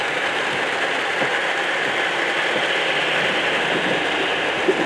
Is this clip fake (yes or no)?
no